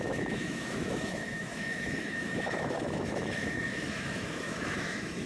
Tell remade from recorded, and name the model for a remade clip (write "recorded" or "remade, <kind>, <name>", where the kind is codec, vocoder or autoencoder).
remade, autoencoder, DAC-VAE